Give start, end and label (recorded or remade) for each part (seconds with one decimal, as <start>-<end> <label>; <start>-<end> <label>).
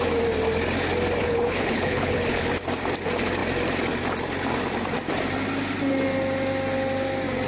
0.0-1.2 recorded; 1.2-2.5 remade; 2.5-7.5 recorded